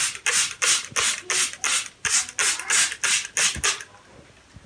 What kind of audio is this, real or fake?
real